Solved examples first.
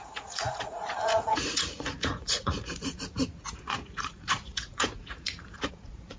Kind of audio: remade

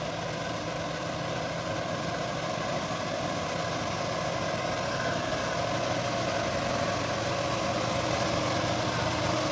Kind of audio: recorded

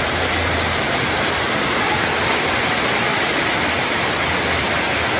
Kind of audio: recorded